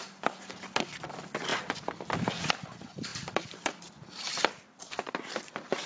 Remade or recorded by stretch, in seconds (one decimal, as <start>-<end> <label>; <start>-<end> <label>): 0.0-1.5 remade; 1.5-2.3 recorded; 2.3-5.9 remade